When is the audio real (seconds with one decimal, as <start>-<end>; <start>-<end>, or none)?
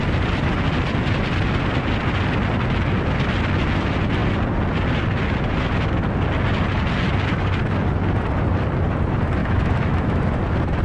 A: 0.0-9.4; 10.2-10.8